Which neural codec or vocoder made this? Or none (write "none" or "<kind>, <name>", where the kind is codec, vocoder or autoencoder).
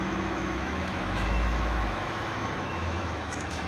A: autoencoder, DAC-VAE